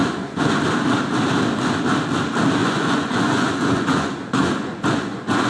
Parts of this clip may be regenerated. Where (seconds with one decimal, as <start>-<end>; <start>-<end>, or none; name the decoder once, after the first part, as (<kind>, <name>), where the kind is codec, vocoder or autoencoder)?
0.0-0.5 (vocoder, Vocos); 2.6-5.5

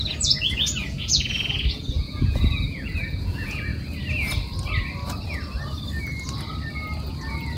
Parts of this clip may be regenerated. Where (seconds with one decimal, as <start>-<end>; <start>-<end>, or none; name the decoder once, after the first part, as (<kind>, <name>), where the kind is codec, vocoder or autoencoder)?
0.0-3.7 (vocoder, Vocos); 7.1-7.6

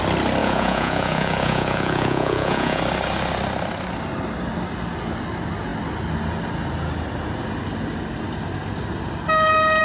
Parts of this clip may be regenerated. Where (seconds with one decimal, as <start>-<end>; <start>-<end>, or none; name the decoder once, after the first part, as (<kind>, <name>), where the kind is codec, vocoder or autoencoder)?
0.4-2.8 (vocoder, Vocos)

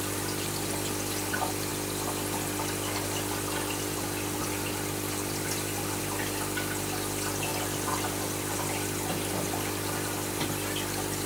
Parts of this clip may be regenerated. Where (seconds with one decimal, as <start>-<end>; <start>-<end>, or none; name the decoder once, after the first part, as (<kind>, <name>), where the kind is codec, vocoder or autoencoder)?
none